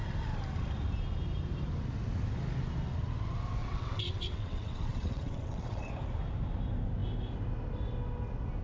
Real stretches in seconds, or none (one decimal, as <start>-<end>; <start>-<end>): 0.0-3.6; 5.9-8.6